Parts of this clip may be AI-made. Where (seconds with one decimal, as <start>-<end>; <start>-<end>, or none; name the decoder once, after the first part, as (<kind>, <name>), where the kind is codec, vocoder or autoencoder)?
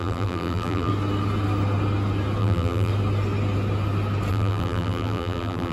0.0-0.9 (vocoder, BigVGAN v2); 2.4-2.9; 4.3-5.7